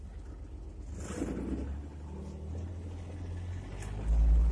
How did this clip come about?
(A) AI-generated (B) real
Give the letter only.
B